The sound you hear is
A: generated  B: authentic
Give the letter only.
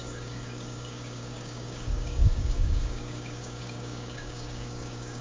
A